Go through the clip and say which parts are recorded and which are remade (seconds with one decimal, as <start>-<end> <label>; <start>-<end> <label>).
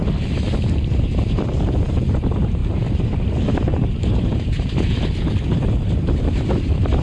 0.0-1.0 recorded; 1.0-7.0 remade